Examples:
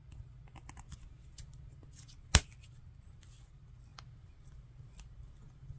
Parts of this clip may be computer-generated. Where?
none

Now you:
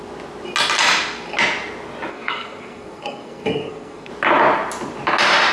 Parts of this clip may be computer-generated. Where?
2.1-4.1 (codec, SNAC)